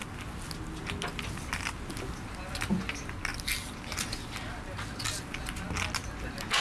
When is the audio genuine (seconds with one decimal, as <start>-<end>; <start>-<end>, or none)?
0.0-6.6